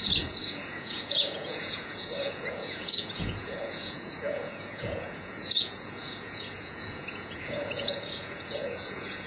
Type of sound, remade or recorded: remade